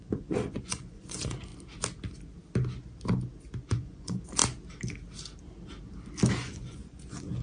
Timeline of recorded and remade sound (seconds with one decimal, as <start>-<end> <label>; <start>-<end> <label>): 0.0-1.5 remade; 1.5-3.7 recorded; 3.7-4.4 remade; 4.4-6.3 recorded; 6.3-7.4 remade